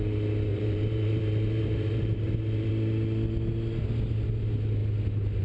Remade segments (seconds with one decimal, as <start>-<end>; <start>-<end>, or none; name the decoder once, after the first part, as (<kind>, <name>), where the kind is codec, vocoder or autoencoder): 0.5-2.7 (vocoder, BigVGAN v2)

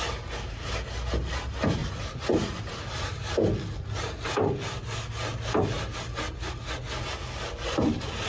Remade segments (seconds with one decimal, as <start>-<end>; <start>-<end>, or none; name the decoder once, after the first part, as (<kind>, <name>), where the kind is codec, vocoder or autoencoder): 1.8-2.7 (vocoder, BigVGAN v2)